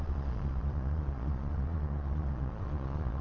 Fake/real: fake